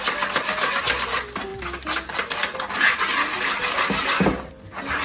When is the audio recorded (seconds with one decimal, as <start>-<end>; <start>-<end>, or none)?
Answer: 0.0-5.0